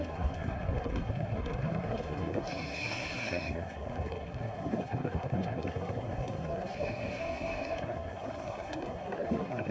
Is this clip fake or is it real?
fake